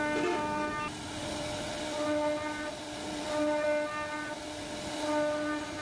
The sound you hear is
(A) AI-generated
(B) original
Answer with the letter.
B